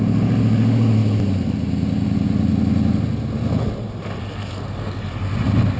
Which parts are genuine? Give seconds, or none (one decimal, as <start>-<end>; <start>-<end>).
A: 0.0-5.8